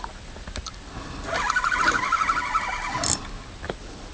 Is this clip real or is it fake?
real